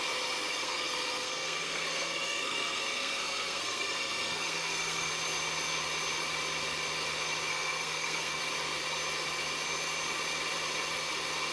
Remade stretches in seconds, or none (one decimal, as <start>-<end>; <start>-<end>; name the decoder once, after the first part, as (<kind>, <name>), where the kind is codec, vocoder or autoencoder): 0.5-5.1 (codec, SNAC); 7.5-8.4